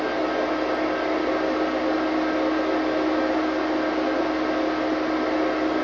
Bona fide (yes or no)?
yes